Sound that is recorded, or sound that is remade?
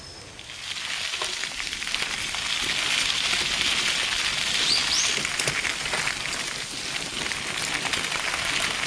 recorded